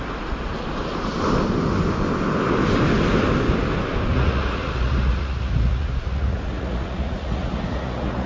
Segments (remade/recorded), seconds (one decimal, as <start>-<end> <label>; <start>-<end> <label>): 0.0-4.1 recorded; 4.1-8.3 remade